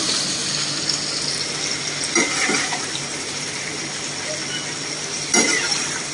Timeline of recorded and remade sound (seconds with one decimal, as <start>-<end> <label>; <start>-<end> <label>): 0.0-0.4 remade; 0.4-2.3 recorded; 2.3-3.8 remade; 3.8-5.0 recorded; 5.0-6.1 remade